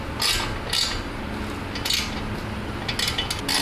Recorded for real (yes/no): yes